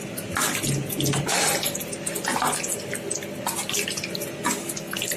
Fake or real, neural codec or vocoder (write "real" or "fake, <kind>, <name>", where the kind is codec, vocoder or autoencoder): real